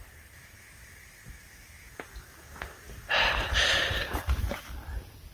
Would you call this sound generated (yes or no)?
no